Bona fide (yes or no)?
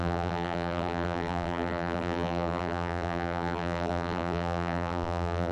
no